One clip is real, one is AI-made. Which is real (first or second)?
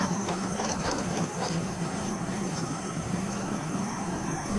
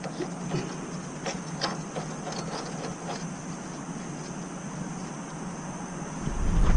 second